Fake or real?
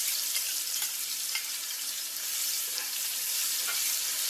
real